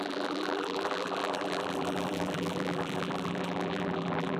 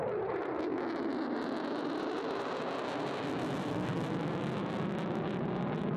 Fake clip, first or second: first